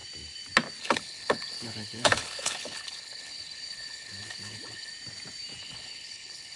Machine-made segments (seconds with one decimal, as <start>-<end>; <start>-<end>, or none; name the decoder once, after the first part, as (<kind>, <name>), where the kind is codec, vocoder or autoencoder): 0.8-4.9 (codec, HILCodec); 5.6-6.6